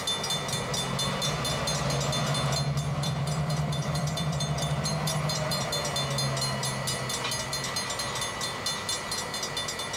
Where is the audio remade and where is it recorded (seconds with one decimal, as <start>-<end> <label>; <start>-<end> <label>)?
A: 0.0-2.9 recorded; 2.9-5.7 remade; 5.7-10.0 recorded